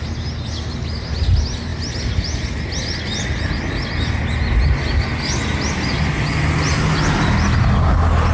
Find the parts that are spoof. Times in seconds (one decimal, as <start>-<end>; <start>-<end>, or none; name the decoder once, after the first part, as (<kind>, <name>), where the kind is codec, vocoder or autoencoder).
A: none

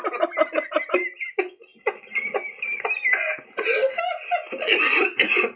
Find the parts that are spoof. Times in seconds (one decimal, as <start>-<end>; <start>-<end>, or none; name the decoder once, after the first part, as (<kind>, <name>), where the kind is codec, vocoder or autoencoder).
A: none